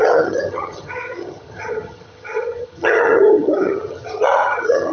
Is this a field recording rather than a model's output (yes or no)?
no